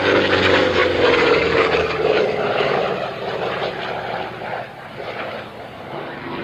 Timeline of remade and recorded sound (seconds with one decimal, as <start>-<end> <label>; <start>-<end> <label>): 0.0-2.8 remade; 2.8-5.2 recorded; 5.2-6.4 remade